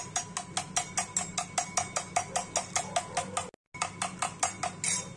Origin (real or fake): real